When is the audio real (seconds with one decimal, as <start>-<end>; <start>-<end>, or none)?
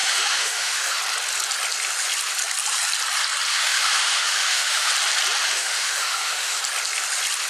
1.0-3.5; 4.9-5.4; 6.6-7.5